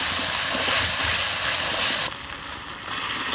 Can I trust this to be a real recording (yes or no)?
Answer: yes